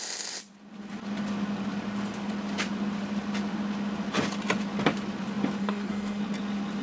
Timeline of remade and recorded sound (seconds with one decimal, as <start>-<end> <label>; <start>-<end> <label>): 0.0-5.6 recorded; 5.6-6.2 remade; 6.2-6.8 recorded